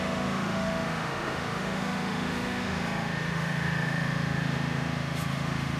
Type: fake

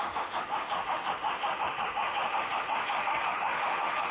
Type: fake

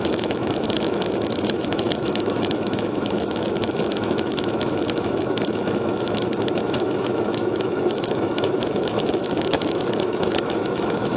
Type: fake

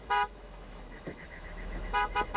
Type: fake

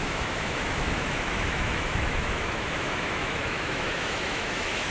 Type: fake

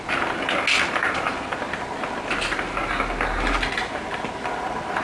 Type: real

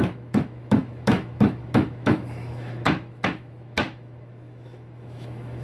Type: fake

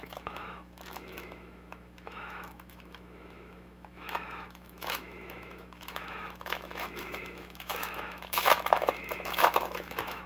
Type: fake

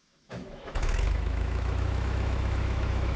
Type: fake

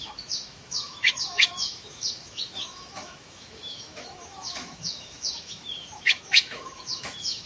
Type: fake